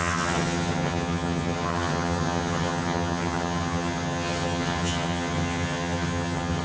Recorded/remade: remade